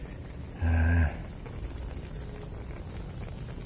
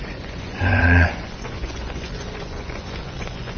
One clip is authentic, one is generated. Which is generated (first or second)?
second